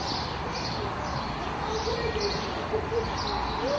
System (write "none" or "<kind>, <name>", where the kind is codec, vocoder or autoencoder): none